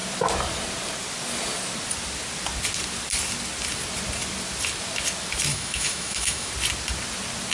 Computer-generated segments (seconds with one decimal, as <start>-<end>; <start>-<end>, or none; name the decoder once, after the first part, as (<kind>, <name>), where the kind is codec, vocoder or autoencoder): 5.5-6.5 (autoencoder, DAC-VAE)